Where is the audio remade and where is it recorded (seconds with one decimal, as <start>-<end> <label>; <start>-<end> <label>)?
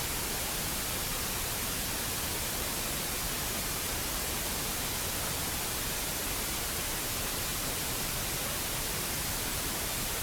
0.0-7.5 recorded; 7.5-8.1 remade; 8.1-9.5 recorded; 9.5-10.2 remade